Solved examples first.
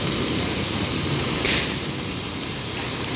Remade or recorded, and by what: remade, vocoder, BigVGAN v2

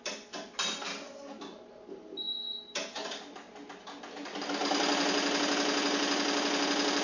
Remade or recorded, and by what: recorded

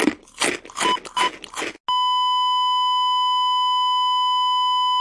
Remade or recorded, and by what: recorded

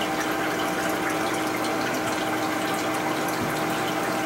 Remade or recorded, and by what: recorded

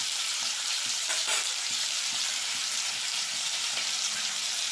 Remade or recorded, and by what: remade, vocoder, BigVGAN v2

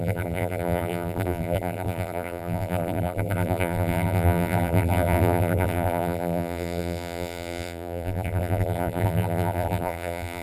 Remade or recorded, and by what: remade, vocoder, BigVGAN v2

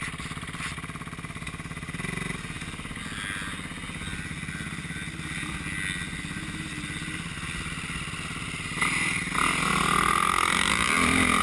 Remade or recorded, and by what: recorded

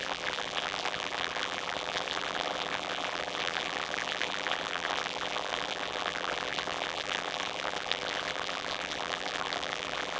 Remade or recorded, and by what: remade, vocoder, BigVGAN v2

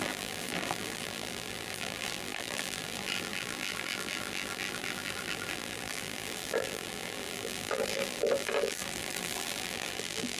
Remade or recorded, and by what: remade, vocoder, BigVGAN v2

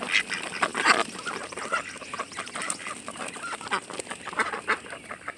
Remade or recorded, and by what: recorded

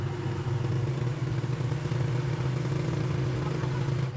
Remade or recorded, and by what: recorded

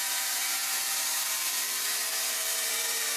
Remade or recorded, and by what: remade, vocoder, BigVGAN v2